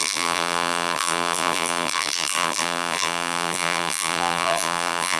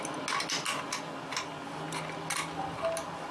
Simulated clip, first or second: first